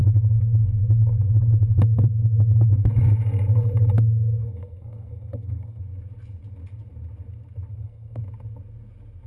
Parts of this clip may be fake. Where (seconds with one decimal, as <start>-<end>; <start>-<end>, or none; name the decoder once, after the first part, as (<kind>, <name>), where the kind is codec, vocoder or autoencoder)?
4.4-5.8 (codec, SNAC); 7.7-8.2